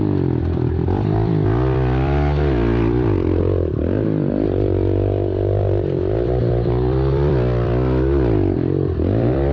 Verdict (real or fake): fake